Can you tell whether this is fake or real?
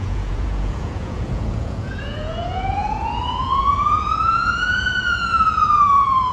fake